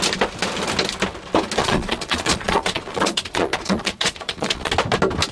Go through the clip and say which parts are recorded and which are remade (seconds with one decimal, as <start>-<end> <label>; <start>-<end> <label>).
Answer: 0.0-1.6 recorded; 1.6-4.7 remade; 4.7-5.3 recorded